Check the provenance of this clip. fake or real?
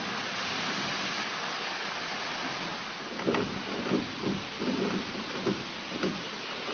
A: real